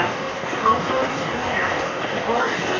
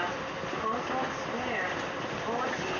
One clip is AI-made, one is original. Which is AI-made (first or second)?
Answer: first